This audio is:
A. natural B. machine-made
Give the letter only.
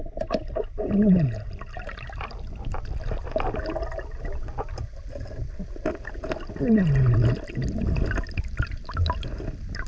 A